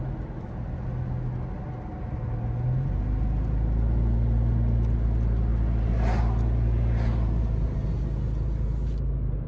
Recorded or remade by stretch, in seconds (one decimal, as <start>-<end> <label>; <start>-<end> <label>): 0.0-9.5 recorded